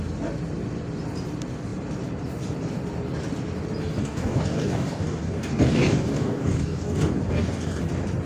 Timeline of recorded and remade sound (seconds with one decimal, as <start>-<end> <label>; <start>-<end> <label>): 0.0-4.0 recorded; 4.0-7.8 remade; 7.8-8.3 recorded